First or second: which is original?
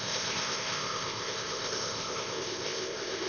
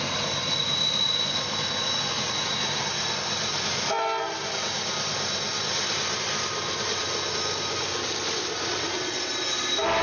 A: second